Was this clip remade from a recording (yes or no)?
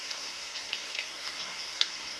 yes